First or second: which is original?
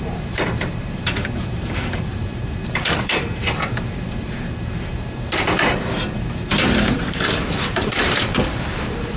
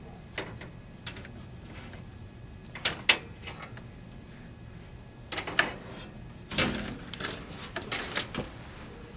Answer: second